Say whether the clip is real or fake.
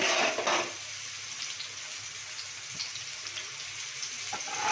real